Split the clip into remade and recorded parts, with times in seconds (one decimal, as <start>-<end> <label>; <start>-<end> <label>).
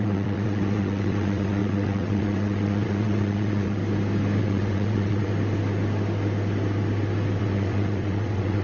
0.0-3.8 remade; 3.8-4.4 recorded; 4.4-5.3 remade; 5.3-7.4 recorded; 7.4-8.6 remade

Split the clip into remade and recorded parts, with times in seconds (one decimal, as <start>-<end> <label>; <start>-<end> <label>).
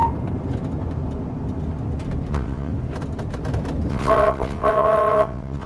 0.0-2.3 recorded; 2.3-2.7 remade; 2.7-3.9 recorded; 3.9-5.7 remade